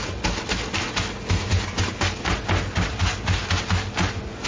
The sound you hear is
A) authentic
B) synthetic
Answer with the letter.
A